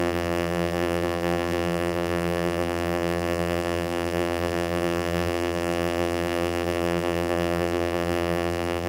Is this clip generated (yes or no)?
yes